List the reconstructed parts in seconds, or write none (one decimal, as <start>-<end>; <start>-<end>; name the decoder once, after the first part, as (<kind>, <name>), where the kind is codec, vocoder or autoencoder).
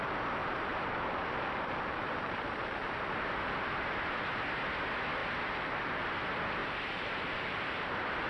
0.4-4.4 (vocoder, BigVGAN v2); 5.2-6.0; 6.6-8.3